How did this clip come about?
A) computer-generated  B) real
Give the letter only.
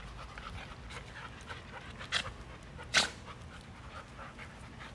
B